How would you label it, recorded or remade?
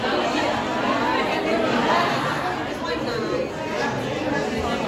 recorded